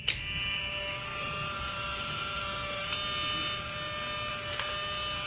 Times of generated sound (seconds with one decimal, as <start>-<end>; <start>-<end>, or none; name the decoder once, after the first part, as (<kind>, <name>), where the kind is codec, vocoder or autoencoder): none

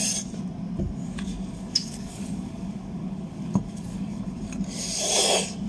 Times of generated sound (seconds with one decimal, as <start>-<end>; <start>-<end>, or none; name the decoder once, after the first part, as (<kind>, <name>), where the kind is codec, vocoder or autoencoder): 1.0-4.4 (codec, DAC)

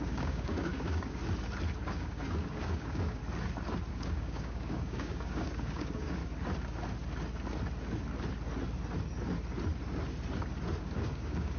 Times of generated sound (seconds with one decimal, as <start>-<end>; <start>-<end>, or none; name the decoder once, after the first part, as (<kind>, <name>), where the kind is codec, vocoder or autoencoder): 0.0-1.2 (codec, DAC); 1.9-3.2; 3.9-6.2; 10.8-11.6

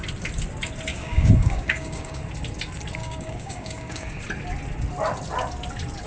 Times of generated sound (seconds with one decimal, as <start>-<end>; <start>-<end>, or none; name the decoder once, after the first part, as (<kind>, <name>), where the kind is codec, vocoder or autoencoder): 0.9-2.2 (codec, DAC); 3.0-4.2